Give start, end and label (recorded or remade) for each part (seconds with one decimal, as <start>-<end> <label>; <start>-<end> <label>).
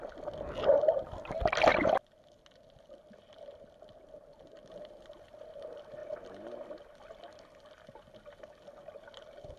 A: 0.0-9.6 recorded